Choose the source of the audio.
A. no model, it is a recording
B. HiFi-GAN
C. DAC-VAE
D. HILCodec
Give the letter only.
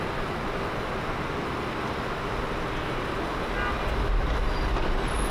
A